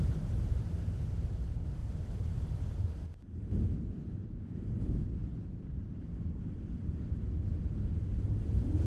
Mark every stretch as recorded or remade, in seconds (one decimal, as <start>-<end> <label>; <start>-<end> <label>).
0.0-1.8 recorded; 1.8-2.8 remade; 2.8-5.2 recorded; 5.2-8.4 remade; 8.4-8.9 recorded